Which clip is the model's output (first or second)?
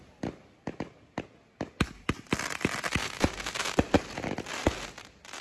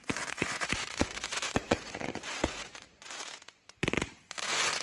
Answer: second